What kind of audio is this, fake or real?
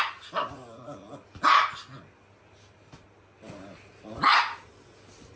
real